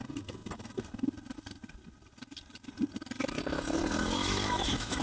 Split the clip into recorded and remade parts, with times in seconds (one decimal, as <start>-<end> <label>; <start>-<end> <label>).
0.0-4.2 recorded; 4.2-5.0 remade

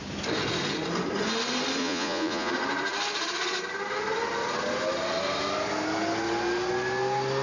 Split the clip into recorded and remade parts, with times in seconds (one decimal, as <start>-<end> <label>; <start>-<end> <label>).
0.0-1.8 recorded; 1.8-2.5 remade; 2.5-7.4 recorded

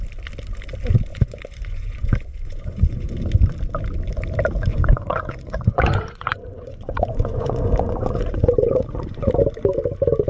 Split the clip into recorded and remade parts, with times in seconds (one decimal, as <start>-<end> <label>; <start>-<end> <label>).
0.0-1.1 recorded; 1.1-3.1 remade; 3.1-4.7 recorded; 4.7-9.3 remade; 9.3-10.3 recorded

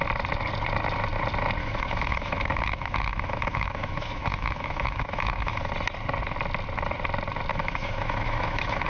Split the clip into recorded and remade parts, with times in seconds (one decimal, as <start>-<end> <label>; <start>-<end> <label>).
0.0-1.6 recorded; 1.6-5.7 remade; 5.7-7.5 recorded; 7.5-8.9 remade

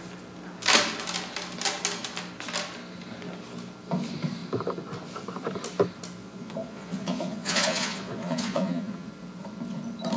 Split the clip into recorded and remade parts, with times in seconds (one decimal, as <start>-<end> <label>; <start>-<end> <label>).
0.0-6.2 recorded; 6.2-9.1 remade; 9.1-10.2 recorded

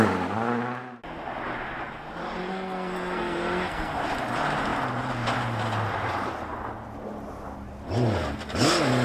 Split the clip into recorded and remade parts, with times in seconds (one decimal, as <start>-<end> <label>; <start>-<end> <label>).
0.0-2.5 recorded; 2.5-4.0 remade; 4.0-9.0 recorded

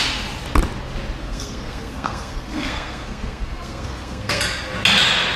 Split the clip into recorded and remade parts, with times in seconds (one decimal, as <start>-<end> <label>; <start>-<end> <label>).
0.0-1.2 recorded; 1.2-4.4 remade; 4.4-5.4 recorded